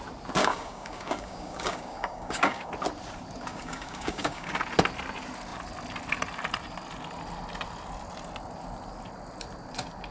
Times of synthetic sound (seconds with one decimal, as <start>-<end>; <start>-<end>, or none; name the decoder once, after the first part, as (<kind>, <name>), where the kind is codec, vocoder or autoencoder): 0.4-2.7 (codec, DAC); 3.5-4.5